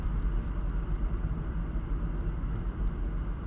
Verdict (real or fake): fake